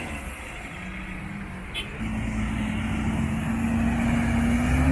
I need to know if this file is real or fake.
real